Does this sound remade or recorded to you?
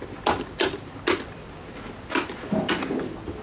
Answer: recorded